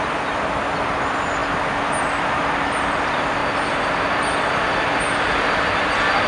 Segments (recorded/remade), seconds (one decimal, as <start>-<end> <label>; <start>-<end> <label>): 0.0-6.3 recorded